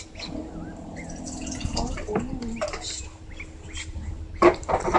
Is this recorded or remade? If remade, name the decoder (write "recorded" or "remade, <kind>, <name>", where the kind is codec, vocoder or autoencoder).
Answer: recorded